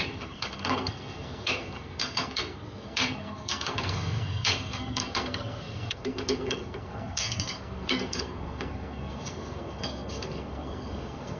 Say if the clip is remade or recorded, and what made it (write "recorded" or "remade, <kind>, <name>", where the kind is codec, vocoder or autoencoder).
remade, codec, SNAC